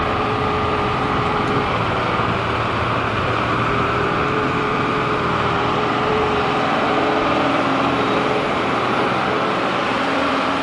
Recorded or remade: remade